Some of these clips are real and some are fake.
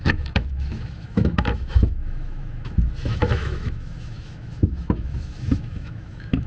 fake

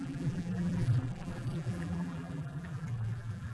fake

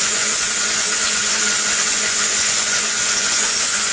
fake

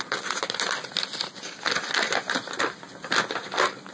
real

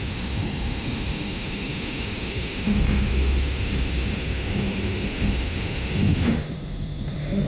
fake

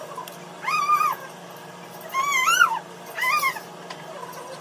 real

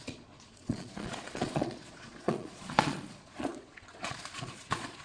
fake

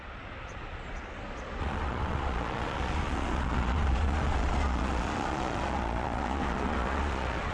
fake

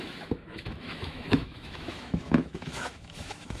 fake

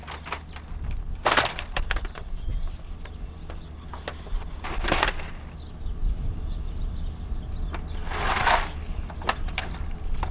real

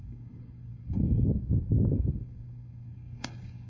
fake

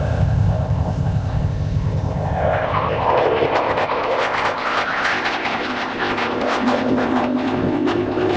fake